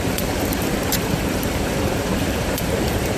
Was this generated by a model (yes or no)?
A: yes